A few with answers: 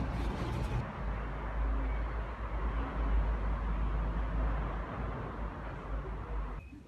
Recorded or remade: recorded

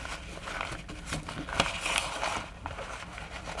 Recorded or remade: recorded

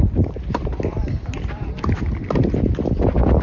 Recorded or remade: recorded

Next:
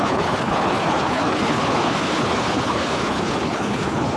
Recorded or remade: remade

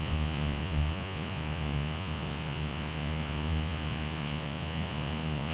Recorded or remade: remade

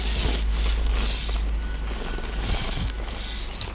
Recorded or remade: recorded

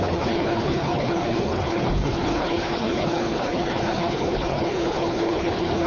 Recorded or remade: remade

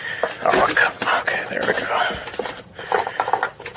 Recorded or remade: recorded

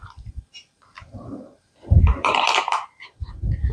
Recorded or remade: remade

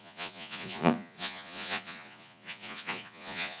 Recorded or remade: remade